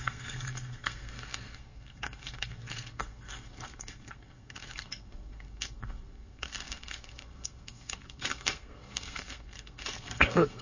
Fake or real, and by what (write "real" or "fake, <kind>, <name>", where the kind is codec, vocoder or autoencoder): fake, codec, SNAC